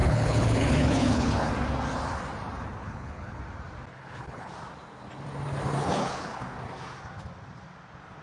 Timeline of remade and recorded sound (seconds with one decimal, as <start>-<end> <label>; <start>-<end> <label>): 0.0-1.5 remade; 1.5-2.8 recorded; 2.8-3.4 remade; 3.4-4.0 recorded; 4.0-4.5 remade; 4.5-5.8 recorded; 5.8-6.4 remade; 6.4-8.2 recorded